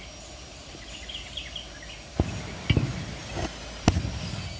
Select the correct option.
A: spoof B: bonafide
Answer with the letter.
B